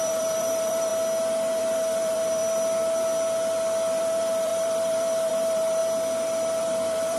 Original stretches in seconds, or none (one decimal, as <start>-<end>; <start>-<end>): 0.9-1.6; 2.4-4.0; 5.8-6.6